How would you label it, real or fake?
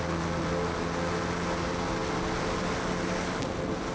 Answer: real